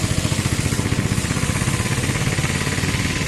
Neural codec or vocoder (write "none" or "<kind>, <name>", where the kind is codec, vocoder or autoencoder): none